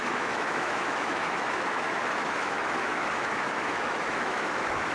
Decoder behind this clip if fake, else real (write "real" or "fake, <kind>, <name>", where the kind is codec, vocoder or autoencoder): fake, autoencoder, DAC-VAE